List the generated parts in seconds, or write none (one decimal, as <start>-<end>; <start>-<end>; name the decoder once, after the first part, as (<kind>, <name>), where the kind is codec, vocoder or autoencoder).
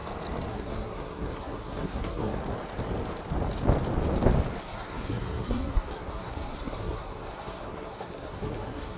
0.5-2.4 (codec, SNAC); 4.6-9.0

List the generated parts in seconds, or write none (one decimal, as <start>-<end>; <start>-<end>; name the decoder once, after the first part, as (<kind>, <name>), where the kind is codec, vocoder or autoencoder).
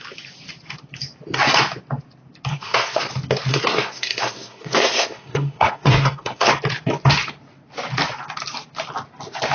2.5-3.1 (codec, SNAC); 3.5-6.5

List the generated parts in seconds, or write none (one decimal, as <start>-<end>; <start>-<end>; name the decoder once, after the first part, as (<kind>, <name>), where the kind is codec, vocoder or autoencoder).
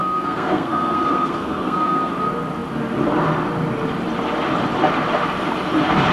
0.0-2.1 (codec, SNAC)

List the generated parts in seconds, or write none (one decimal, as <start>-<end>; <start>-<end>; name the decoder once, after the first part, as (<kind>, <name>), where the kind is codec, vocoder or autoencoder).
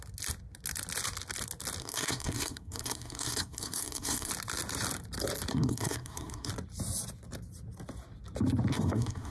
1.8-4.3 (codec, SNAC); 5.5-6.5; 8.7-9.3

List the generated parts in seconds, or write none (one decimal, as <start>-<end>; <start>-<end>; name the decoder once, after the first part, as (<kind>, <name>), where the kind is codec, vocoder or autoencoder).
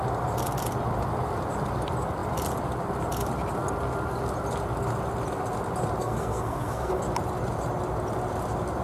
6.0-7.0 (codec, SNAC)